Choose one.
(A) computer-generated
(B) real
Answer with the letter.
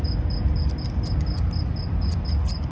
B